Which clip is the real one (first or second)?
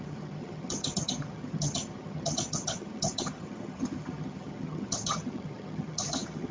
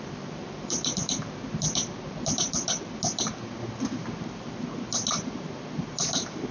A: second